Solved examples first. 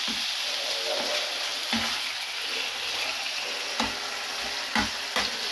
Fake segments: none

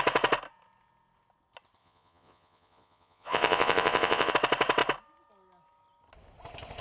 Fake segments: 1.8-4.3 (vocoder, Vocos)